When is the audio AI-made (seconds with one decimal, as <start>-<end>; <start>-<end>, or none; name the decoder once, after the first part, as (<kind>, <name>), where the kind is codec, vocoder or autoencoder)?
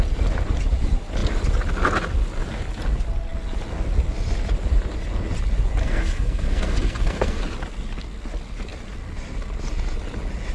5.8-7.4 (codec, SNAC)